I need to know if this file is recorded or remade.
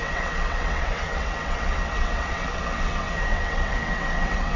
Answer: remade